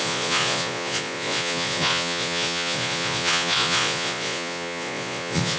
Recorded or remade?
remade